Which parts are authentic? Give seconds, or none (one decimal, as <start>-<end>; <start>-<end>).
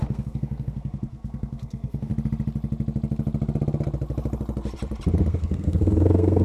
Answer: 2.1-5.3